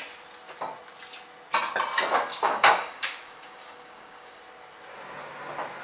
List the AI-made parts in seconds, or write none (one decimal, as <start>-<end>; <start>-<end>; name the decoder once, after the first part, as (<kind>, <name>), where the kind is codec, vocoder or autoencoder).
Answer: 2.3-4.4 (codec, DAC)